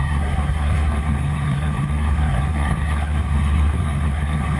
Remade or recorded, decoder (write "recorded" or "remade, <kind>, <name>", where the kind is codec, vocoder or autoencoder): remade, codec, SNAC